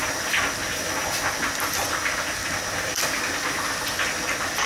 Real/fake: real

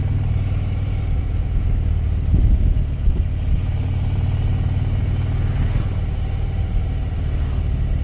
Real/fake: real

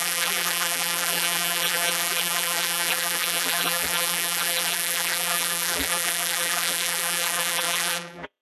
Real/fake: fake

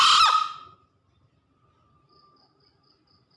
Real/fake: real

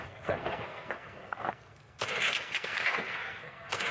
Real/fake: fake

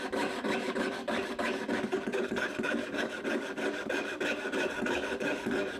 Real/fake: fake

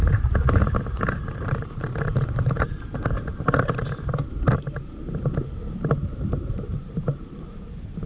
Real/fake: fake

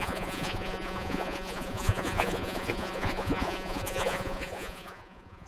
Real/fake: fake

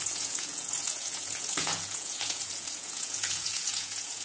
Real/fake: fake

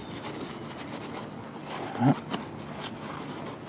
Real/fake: real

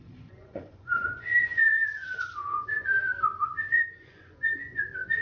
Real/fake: fake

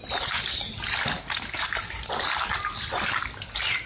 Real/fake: real